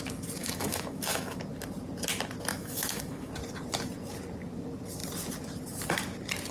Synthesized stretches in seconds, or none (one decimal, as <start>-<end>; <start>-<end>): 0.4-1.4; 2.5-3.3